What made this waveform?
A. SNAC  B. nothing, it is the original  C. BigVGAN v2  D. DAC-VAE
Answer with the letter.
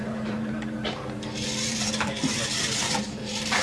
C